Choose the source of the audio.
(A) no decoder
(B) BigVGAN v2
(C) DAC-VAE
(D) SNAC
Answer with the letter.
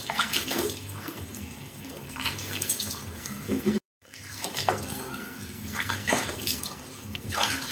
D